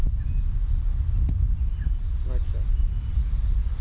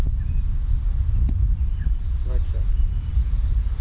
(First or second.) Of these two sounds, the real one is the first